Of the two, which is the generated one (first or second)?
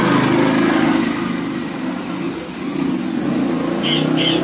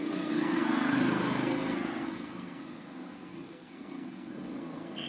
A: second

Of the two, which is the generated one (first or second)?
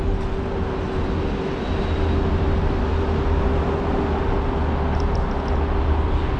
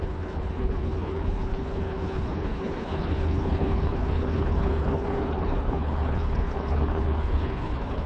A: second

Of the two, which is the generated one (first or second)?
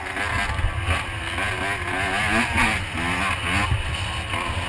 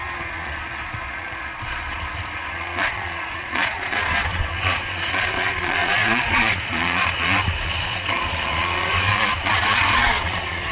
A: second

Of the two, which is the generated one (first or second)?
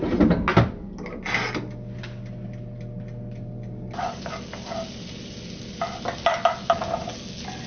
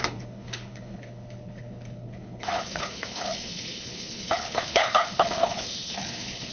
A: second